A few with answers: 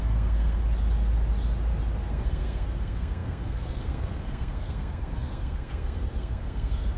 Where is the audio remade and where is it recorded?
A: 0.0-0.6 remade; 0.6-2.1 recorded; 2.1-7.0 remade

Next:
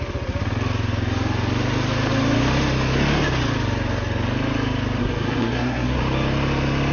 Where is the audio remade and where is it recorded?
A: 0.0-5.0 recorded; 5.0-6.0 remade; 6.0-6.9 recorded

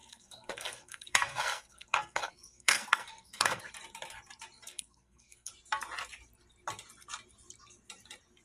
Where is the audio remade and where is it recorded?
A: 0.0-3.6 remade; 3.6-4.7 recorded; 4.7-5.5 remade; 5.5-8.4 recorded